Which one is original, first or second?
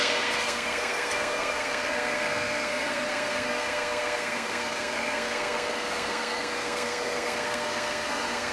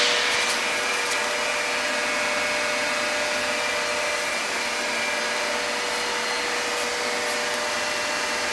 second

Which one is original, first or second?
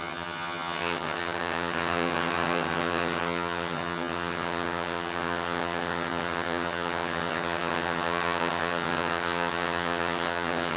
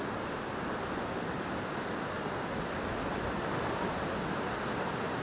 second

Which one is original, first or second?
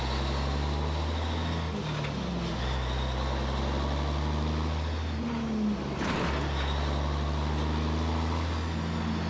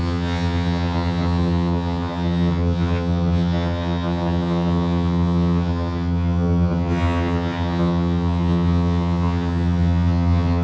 first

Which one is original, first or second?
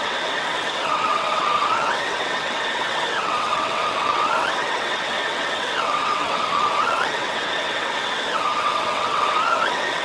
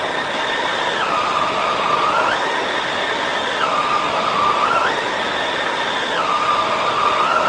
second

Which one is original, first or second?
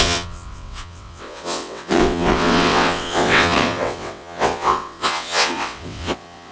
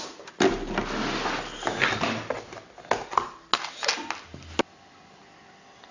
second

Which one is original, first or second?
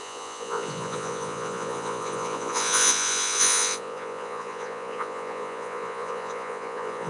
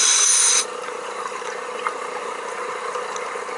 second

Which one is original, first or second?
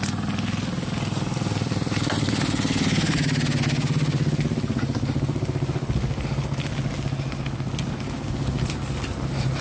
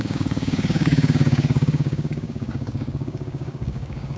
first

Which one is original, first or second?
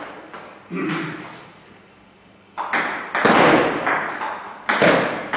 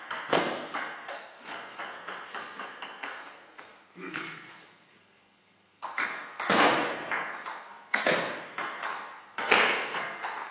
first